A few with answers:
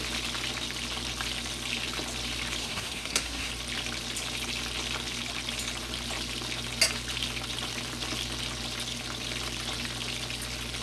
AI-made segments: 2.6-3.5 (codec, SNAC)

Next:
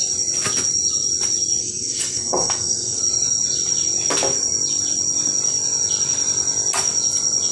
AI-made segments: 1.6-3.0 (codec, SNAC)

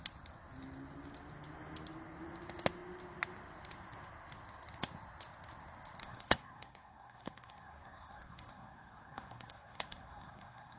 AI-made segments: 6.0-10.8 (codec, SNAC)

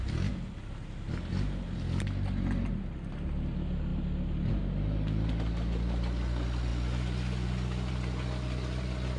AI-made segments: none

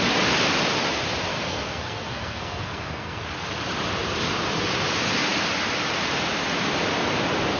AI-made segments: 1.3-3.2 (codec, SNAC)

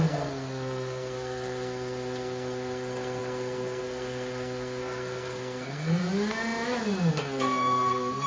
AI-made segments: 0.0-6.0 (codec, SNAC); 7.1-8.3